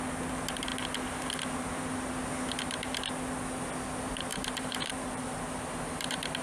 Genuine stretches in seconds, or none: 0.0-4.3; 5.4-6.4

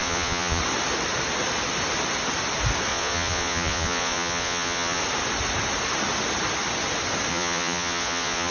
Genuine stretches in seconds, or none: 0.6-2.9; 5.0-7.3

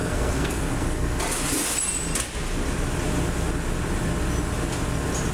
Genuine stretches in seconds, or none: 1.2-5.3

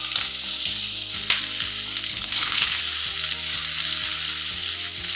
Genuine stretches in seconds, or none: 0.0-2.1; 2.8-5.2